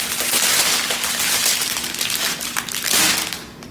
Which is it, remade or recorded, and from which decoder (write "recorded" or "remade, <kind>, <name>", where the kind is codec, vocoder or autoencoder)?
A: recorded